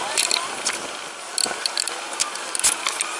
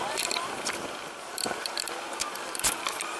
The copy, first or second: second